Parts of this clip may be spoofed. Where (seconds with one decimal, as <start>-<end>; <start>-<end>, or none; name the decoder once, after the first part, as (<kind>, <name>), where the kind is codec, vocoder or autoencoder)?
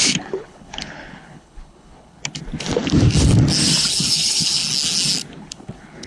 0.0-2.2 (codec, HILCodec); 3.9-4.6; 5.3-6.1